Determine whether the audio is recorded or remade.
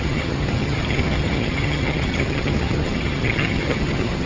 remade